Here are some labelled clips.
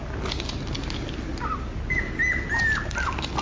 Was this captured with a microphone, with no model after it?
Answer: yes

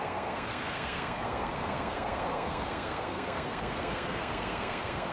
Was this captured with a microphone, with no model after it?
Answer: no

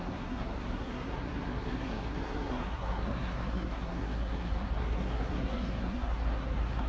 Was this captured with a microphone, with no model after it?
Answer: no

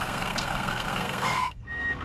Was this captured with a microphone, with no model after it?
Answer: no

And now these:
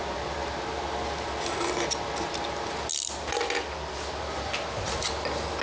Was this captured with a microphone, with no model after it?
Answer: yes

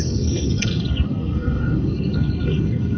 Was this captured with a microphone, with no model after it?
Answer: no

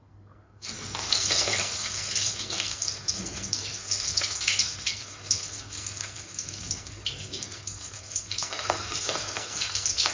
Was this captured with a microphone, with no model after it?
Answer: no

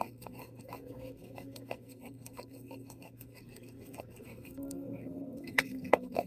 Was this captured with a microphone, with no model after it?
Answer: no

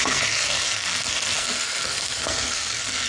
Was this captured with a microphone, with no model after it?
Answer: no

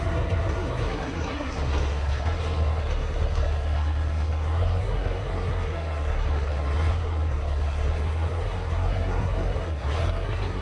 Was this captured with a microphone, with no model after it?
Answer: no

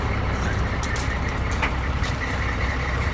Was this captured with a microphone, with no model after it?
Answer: yes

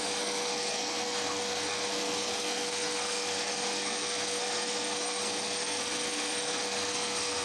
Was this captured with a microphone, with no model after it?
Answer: no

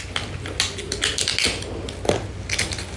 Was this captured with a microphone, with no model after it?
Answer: yes